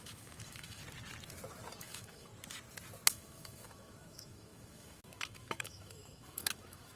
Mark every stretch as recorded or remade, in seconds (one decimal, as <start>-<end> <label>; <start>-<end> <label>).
0.0-0.8 remade; 0.8-1.8 recorded; 1.8-2.3 remade; 2.3-3.1 recorded; 3.1-7.0 remade